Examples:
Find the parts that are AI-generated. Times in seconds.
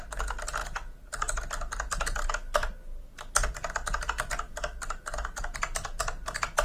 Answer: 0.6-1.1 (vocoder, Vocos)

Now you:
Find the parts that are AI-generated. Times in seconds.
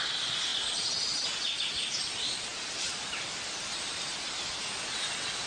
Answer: none